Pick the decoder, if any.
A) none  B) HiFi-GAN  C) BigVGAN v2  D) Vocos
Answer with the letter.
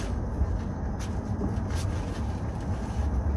A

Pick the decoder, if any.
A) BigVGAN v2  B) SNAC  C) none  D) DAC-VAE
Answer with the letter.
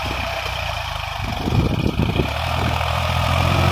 A